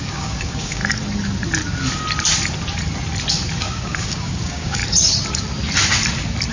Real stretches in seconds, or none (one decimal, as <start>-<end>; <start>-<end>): 0.8-3.6; 4.8-6.5